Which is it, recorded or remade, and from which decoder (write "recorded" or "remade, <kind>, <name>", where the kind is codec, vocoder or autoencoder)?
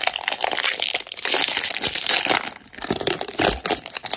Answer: recorded